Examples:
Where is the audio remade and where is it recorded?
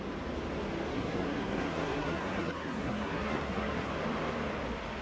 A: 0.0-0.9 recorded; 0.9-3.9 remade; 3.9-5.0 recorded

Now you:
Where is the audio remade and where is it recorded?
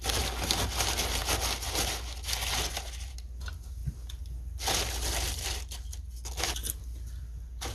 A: 0.0-7.7 recorded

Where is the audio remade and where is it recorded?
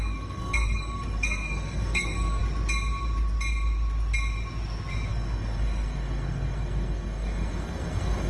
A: 0.0-2.4 remade; 2.4-5.1 recorded; 5.1-8.3 remade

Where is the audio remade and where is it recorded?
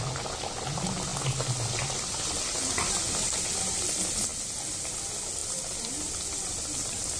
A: 0.0-7.2 recorded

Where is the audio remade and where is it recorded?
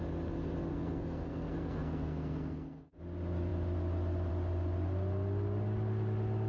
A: 0.0-0.7 recorded; 0.7-3.0 remade; 3.0-6.5 recorded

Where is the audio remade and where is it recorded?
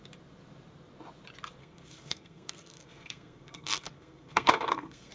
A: 0.0-1.6 recorded; 1.6-5.1 remade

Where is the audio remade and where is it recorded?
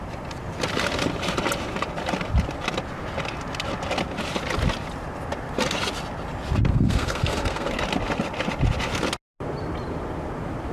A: 0.0-6.7 recorded; 6.7-7.7 remade; 7.7-10.7 recorded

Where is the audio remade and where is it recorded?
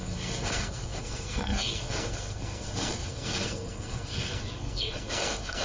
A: 0.0-5.6 remade